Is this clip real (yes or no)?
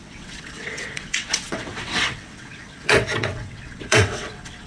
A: no